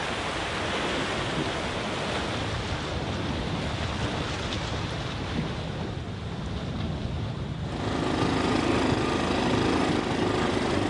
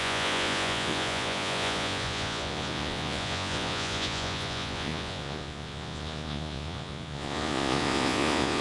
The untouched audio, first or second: first